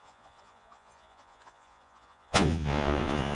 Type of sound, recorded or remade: remade